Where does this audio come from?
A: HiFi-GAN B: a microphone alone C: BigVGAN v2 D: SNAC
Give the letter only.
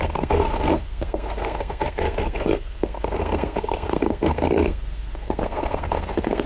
D